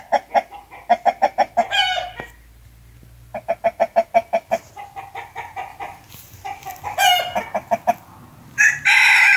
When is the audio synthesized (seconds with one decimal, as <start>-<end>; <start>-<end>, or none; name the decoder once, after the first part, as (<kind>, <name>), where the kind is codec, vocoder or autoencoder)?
none